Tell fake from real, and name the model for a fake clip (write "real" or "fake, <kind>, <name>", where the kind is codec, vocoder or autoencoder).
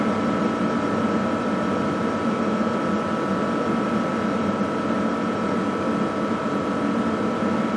real